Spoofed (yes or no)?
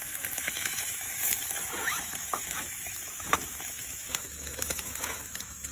yes